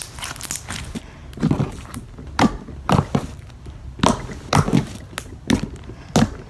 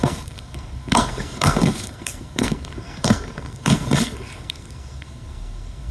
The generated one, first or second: second